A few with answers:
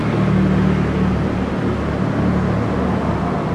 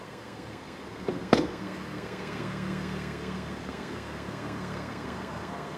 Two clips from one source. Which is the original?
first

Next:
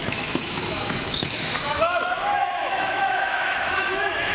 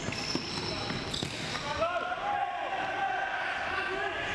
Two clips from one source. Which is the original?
second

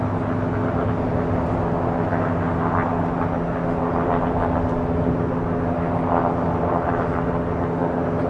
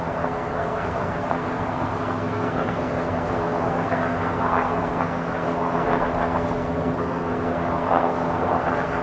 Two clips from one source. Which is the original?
first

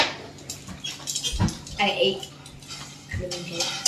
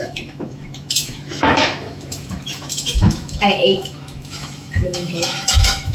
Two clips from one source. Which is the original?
first